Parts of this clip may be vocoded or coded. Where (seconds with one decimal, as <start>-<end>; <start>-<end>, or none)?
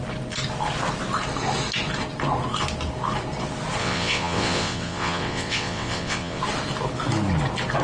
3.8-6.4